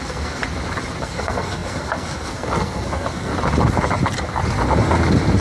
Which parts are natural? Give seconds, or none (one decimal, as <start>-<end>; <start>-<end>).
0.4-1.0; 3.3-5.4